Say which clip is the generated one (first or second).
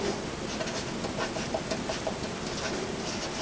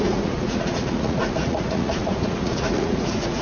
second